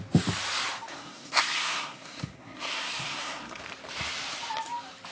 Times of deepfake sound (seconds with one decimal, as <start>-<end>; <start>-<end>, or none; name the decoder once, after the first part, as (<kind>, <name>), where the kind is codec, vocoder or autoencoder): 0.9-3.6 (codec, SNAC)